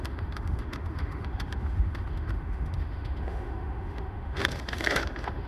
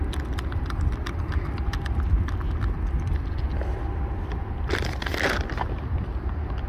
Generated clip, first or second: first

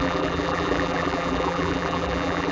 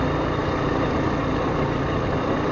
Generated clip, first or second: first